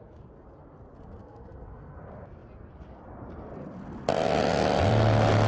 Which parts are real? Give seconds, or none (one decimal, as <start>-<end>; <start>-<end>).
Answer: 0.0-1.2; 2.0-5.5